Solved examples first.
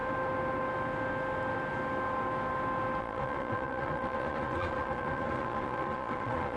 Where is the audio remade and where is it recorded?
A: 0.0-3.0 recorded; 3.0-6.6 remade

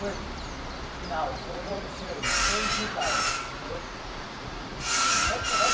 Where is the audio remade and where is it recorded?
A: 0.0-1.3 recorded; 1.3-2.2 remade; 2.2-3.6 recorded; 3.6-5.3 remade; 5.3-5.7 recorded

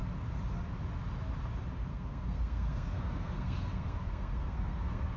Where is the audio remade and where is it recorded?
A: 0.0-1.9 recorded; 1.9-5.2 remade

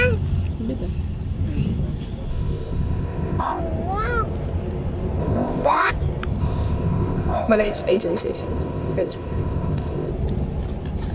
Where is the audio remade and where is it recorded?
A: 0.0-2.3 recorded; 2.3-3.6 remade; 3.6-5.2 recorded; 5.2-5.9 remade; 5.9-6.4 recorded; 6.4-10.1 remade; 10.1-11.1 recorded

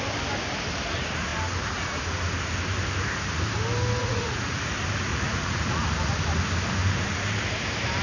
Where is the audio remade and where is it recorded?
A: 0.0-4.0 recorded; 4.0-4.6 remade; 4.6-5.1 recorded; 5.1-5.8 remade; 5.8-8.0 recorded

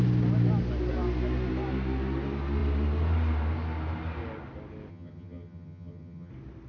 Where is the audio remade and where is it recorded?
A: 0.0-4.9 recorded; 4.9-6.3 remade; 6.3-6.7 recorded

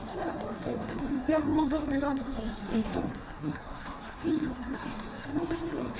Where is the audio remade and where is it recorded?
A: 0.0-6.0 remade

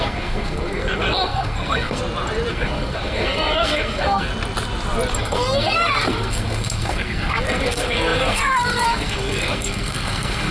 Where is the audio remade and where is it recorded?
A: 0.0-2.0 remade; 2.0-2.5 recorded; 2.5-4.3 remade; 4.3-5.2 recorded; 5.2-10.5 remade